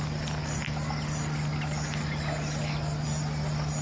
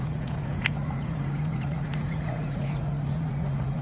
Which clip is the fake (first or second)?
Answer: second